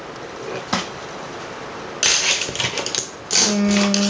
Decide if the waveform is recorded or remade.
recorded